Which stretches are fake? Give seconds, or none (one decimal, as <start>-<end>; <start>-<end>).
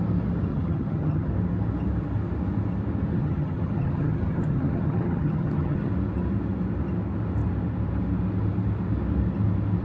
0.5-1.3; 3.1-5.9